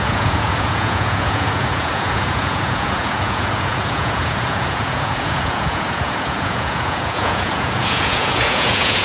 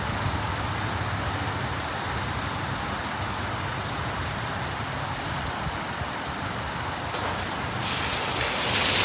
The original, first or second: second